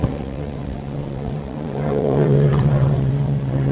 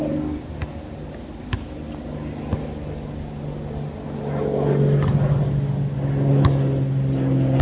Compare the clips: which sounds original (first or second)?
second